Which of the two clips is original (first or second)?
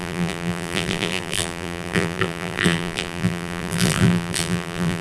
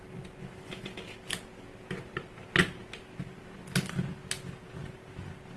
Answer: second